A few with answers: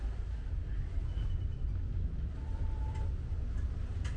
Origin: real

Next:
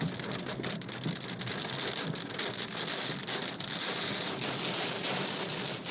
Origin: real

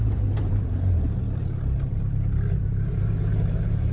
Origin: fake